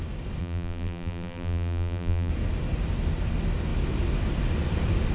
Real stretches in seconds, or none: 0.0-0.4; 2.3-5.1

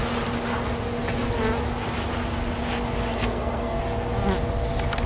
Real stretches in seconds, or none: 0.0-3.1; 3.8-5.1

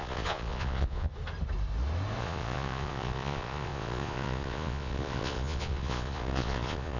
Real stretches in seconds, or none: 1.1-2.2